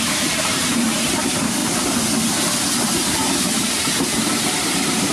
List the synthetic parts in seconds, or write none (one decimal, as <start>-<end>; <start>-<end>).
0.0-1.6; 3.4-5.1